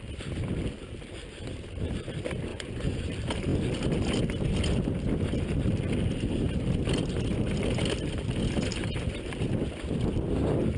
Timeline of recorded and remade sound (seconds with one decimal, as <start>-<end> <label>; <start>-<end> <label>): 0.0-2.5 recorded; 2.5-3.1 remade; 3.1-10.8 recorded